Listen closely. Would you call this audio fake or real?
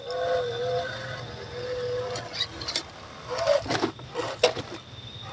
real